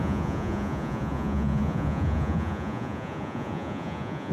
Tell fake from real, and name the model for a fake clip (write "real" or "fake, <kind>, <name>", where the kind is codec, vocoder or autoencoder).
fake, vocoder, Vocos